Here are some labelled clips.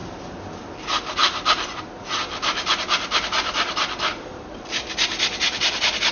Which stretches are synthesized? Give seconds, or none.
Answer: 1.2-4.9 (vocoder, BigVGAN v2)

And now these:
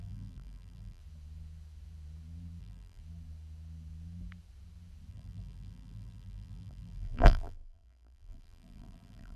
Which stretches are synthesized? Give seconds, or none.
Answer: 0.0-1.0 (vocoder, BigVGAN v2); 2.6-3.0; 5.1-9.4

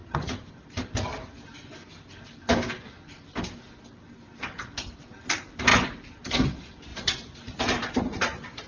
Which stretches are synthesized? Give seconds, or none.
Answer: 5.7-6.5 (vocoder, BigVGAN v2); 6.9-7.6